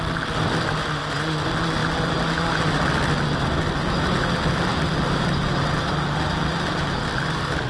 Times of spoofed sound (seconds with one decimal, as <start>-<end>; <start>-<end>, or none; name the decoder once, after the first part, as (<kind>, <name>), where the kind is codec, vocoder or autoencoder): none

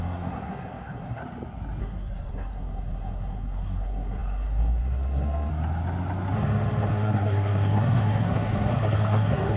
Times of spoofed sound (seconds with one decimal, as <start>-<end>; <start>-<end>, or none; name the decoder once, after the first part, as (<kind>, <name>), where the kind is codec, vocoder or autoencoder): 0.0-1.2 (codec, SNAC); 1.8-5.5; 6.9-9.6

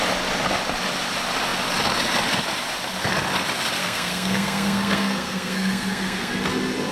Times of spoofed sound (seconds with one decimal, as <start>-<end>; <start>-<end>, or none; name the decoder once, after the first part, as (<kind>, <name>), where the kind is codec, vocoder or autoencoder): 3.8-6.3 (codec, SNAC)

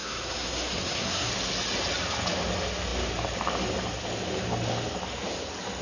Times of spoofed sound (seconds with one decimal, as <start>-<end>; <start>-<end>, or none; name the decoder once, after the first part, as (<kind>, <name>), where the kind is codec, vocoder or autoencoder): 0.0-1.3 (codec, SNAC)

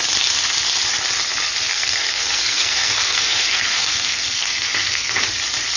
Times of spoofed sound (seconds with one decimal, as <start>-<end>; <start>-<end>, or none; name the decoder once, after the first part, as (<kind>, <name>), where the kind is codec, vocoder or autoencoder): 1.7-5.2 (codec, SNAC)